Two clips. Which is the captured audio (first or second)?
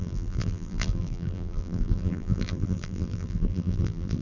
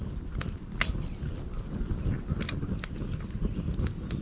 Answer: second